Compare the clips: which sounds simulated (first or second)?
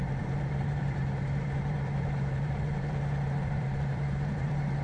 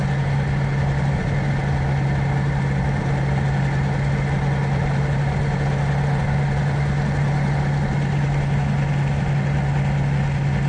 first